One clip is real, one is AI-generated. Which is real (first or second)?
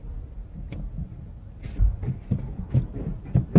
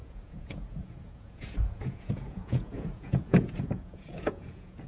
first